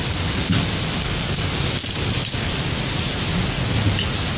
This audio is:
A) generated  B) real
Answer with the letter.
B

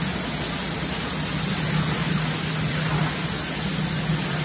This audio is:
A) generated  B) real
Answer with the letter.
B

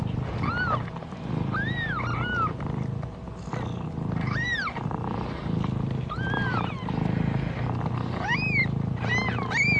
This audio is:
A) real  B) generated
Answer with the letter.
A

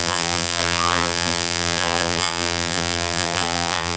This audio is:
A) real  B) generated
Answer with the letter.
B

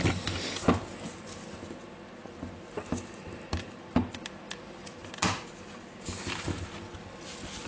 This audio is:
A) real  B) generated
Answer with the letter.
A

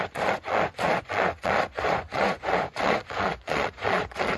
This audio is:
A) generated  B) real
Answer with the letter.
A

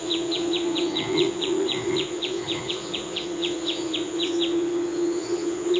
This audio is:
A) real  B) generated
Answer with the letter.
B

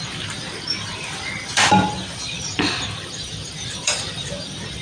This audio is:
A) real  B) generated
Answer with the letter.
B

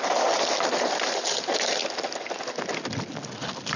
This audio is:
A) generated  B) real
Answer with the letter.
B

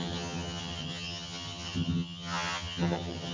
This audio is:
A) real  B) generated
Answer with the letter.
B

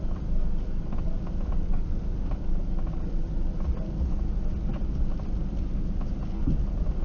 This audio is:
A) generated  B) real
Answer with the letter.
B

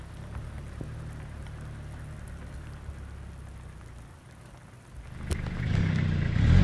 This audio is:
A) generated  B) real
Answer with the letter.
B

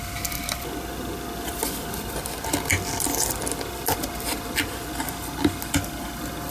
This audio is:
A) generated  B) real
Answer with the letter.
B